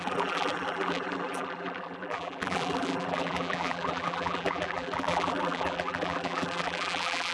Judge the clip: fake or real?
fake